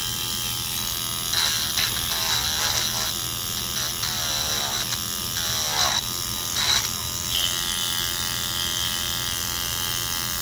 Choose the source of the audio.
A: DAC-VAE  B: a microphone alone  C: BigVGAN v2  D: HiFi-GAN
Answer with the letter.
B